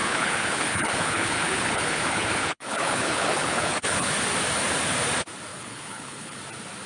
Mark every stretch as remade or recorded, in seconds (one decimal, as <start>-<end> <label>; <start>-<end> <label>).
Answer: 0.0-4.1 remade; 4.1-5.5 recorded; 5.5-6.4 remade; 6.4-6.9 recorded